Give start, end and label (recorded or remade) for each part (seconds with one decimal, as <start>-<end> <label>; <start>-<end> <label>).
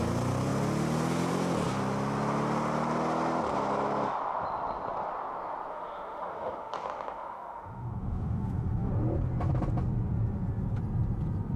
0.0-5.7 recorded; 5.7-8.9 remade; 8.9-11.6 recorded